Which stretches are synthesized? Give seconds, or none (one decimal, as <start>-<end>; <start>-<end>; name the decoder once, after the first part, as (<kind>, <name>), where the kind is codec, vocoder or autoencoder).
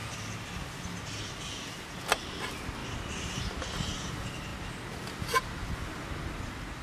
none